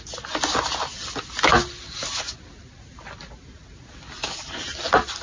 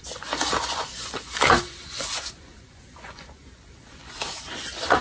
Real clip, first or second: first